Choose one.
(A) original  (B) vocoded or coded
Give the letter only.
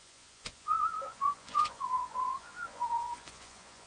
B